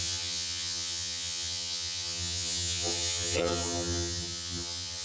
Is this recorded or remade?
remade